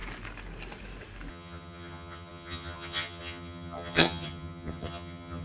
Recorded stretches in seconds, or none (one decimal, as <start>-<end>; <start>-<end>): 0.0-1.3